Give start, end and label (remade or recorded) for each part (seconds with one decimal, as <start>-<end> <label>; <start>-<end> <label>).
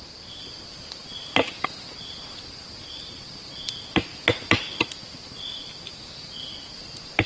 0.0-1.0 remade; 1.0-2.1 recorded; 2.1-4.1 remade; 4.1-5.3 recorded; 5.3-7.3 remade